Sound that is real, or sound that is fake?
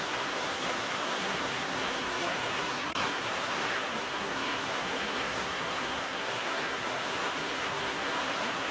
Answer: fake